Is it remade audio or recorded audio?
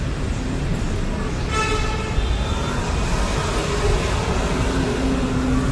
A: recorded